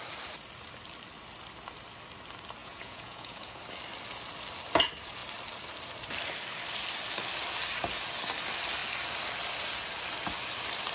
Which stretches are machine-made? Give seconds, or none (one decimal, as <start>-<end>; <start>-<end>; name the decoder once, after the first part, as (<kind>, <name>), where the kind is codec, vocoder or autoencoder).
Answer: 2.6-3.6 (vocoder, Vocos)